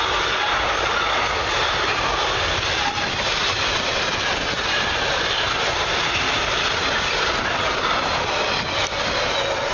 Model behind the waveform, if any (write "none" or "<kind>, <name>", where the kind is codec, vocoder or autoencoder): none